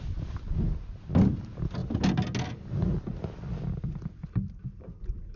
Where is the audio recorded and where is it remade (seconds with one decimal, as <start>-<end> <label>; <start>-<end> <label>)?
0.0-5.4 recorded